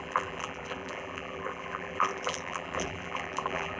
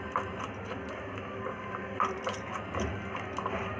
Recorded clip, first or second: second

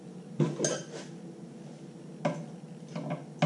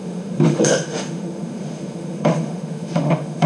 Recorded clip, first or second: first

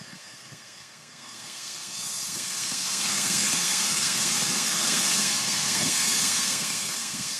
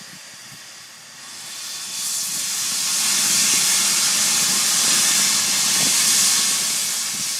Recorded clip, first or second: second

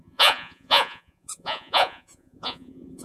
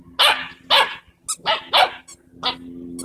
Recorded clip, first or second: second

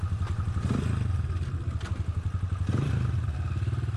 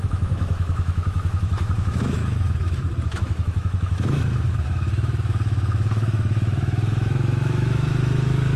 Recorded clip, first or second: first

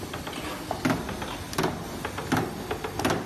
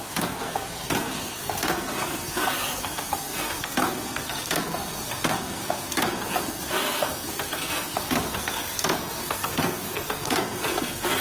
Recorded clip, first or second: first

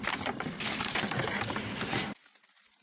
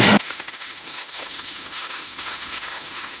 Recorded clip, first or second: first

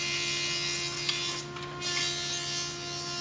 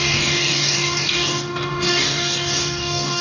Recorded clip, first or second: first